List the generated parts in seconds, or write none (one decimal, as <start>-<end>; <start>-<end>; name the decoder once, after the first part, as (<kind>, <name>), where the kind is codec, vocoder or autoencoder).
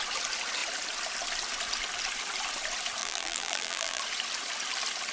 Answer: 3.0-4.0 (vocoder, BigVGAN v2)